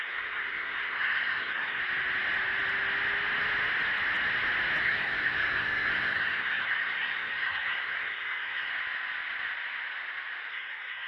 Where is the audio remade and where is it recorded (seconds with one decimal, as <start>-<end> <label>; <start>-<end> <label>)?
0.0-1.8 remade; 1.8-4.8 recorded; 4.8-8.7 remade; 8.7-10.5 recorded; 10.5-11.1 remade